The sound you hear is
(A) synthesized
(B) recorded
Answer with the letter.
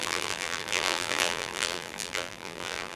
A